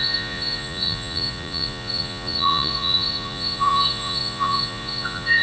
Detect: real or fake fake